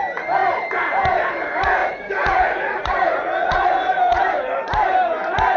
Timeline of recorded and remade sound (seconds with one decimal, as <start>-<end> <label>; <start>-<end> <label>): 0.0-1.8 recorded; 1.8-4.2 remade; 4.2-5.6 recorded